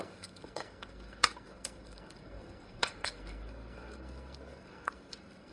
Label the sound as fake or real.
fake